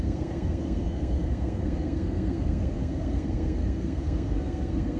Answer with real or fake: fake